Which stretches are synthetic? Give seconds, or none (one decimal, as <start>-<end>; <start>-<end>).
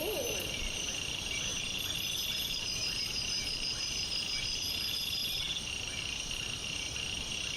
0.0-5.2